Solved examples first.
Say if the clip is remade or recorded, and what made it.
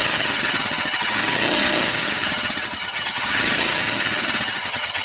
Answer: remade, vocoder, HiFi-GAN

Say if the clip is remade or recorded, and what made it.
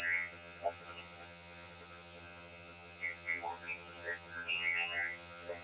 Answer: remade, vocoder, HiFi-GAN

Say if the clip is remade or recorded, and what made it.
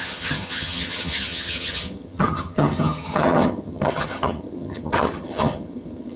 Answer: remade, vocoder, HiFi-GAN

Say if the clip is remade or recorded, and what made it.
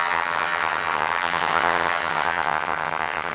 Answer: remade, vocoder, HiFi-GAN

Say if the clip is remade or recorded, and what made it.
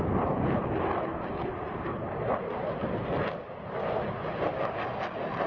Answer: recorded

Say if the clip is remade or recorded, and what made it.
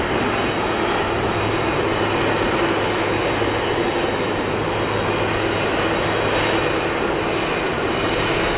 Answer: recorded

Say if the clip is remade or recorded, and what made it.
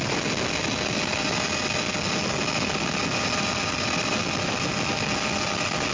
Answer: recorded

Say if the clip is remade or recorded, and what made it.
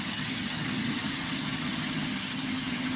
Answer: remade, vocoder, HiFi-GAN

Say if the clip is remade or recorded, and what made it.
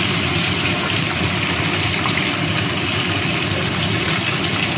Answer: recorded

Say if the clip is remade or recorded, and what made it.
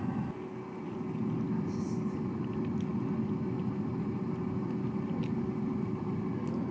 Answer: recorded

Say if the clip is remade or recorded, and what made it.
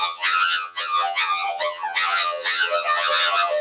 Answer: remade, vocoder, HiFi-GAN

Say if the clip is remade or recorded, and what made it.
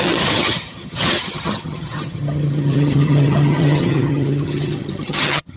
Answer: remade, vocoder, HiFi-GAN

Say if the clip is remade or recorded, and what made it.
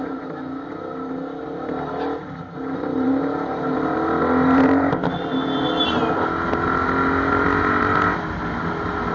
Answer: recorded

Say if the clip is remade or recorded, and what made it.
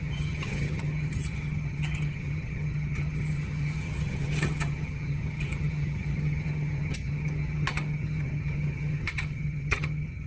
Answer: remade, vocoder, HiFi-GAN